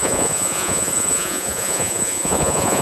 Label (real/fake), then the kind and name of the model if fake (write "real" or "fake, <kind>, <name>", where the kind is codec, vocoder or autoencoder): fake, vocoder, Vocos